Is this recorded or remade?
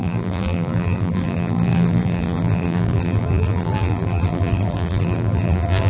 remade